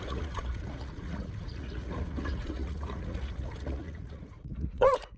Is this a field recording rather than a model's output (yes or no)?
no